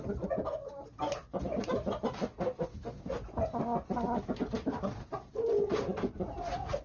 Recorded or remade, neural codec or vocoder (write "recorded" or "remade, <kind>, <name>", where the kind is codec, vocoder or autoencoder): recorded